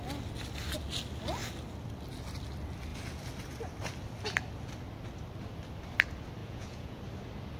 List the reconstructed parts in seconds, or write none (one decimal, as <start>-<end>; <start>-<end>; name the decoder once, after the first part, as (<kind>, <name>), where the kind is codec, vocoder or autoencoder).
6.4-7.0 (vocoder, Vocos)